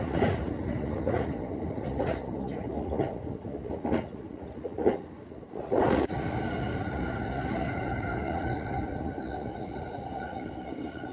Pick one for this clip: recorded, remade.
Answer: remade